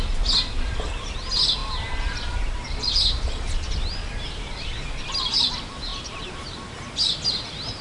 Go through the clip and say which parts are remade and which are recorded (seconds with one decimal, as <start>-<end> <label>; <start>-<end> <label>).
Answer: 0.0-5.9 recorded; 5.9-6.9 remade; 6.9-7.8 recorded